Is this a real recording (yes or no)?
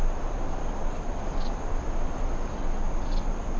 yes